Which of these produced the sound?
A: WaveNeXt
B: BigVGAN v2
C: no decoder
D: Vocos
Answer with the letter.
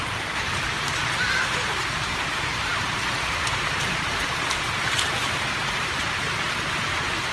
B